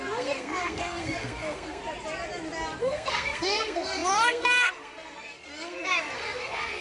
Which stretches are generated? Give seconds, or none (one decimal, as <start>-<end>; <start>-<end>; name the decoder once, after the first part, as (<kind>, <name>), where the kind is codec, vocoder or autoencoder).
0.0-1.8 (codec, SNAC); 2.8-6.8